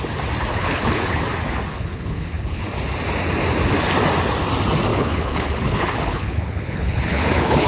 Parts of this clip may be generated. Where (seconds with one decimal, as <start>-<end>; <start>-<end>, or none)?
0.5-1.2; 1.7-2.6; 4.9-7.7